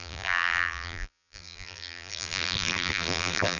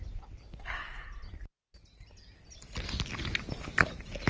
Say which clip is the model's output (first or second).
first